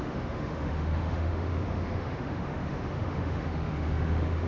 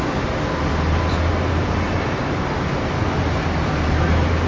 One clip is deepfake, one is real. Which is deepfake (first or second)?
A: first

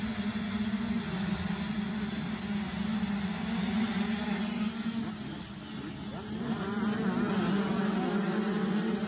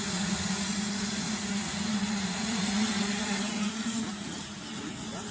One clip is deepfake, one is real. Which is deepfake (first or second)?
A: second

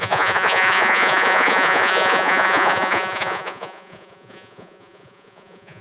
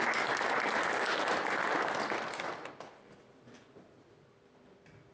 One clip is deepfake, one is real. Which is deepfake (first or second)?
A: first